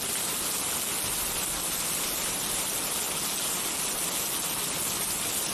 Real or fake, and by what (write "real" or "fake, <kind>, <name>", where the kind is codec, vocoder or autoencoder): real